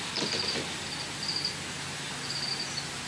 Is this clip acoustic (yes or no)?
yes